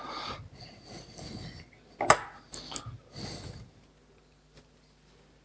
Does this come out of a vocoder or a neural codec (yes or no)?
no